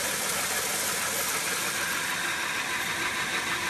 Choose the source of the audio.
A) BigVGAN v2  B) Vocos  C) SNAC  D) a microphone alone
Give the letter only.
D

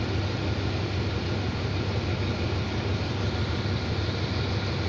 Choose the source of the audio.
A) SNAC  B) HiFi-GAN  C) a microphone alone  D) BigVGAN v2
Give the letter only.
C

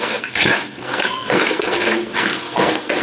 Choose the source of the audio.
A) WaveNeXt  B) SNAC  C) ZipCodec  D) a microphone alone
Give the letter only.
B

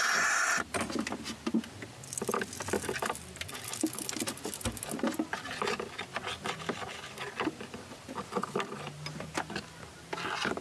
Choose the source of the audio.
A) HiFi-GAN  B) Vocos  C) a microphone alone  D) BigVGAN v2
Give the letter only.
C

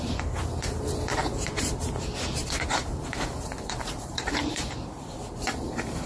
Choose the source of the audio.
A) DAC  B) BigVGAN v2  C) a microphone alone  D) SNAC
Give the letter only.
B